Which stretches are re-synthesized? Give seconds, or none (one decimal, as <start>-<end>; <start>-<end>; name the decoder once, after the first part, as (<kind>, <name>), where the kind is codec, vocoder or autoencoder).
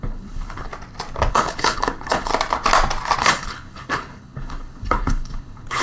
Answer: 0.0-0.7 (codec, HILCodec); 1.3-2.3; 3.2-5.8